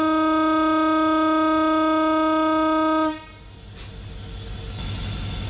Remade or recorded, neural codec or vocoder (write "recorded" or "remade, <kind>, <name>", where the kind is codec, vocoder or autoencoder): recorded